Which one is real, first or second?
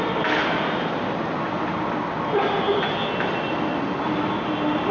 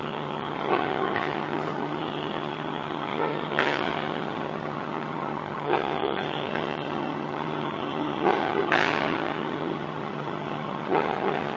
first